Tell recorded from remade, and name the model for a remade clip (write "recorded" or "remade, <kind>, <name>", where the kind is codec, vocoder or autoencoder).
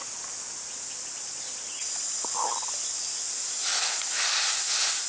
recorded